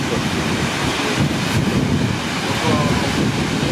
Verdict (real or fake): real